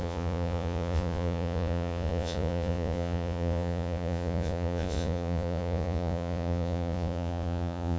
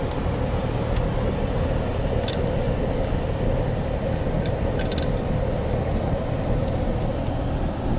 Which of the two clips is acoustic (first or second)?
second